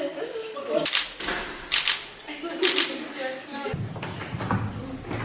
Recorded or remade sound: recorded